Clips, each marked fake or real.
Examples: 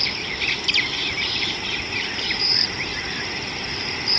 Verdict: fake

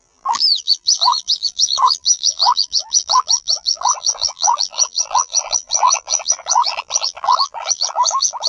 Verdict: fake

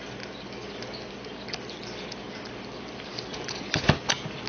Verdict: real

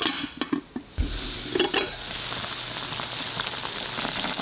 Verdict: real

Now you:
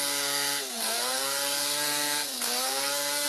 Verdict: fake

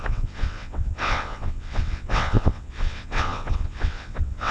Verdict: fake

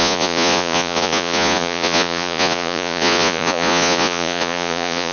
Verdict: fake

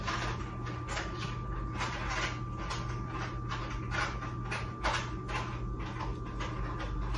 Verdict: real